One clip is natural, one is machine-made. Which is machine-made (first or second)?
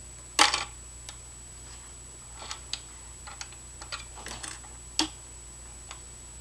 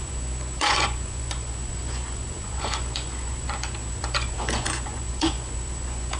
second